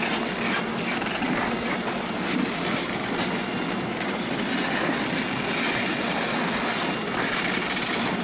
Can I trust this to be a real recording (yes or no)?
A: yes